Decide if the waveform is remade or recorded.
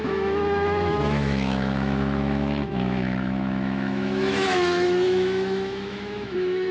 remade